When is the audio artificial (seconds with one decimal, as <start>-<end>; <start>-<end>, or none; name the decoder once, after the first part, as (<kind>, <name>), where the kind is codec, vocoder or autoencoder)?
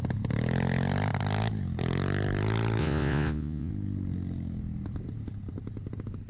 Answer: 2.8-3.7 (vocoder, Vocos)